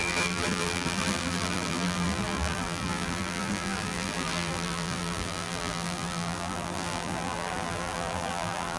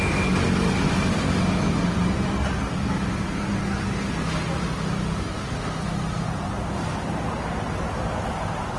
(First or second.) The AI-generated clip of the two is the first